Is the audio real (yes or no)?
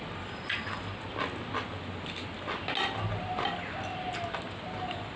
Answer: yes